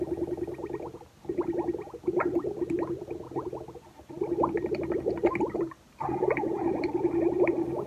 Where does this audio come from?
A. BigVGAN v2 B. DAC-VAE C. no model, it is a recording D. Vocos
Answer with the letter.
C